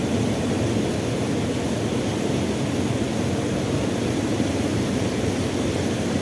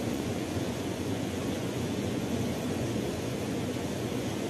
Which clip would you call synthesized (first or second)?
second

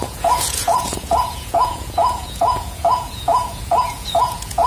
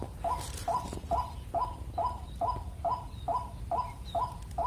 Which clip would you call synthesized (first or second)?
first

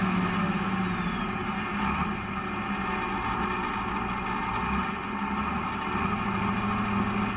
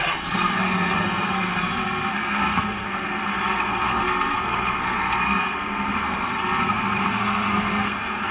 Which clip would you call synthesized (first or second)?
second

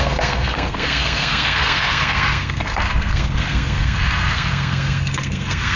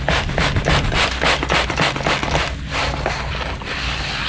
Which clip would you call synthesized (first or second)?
first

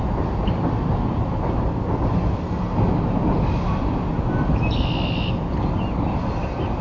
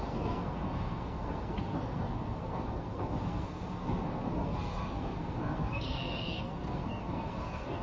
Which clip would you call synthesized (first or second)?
second